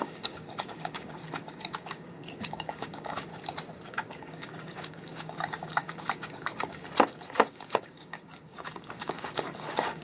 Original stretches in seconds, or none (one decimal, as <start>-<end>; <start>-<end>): 3.3-3.9; 6.8-7.5